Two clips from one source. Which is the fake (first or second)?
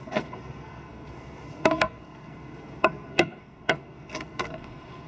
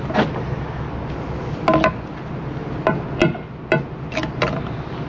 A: first